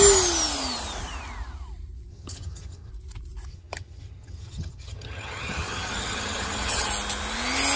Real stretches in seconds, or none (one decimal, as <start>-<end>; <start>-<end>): 0.0-2.1; 2.9-3.5; 6.9-7.8